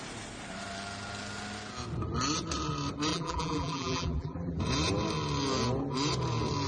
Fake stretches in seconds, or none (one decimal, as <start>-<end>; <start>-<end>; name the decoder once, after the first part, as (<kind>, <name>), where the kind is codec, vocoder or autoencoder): 3.1-4.6 (vocoder, BigVGAN v2)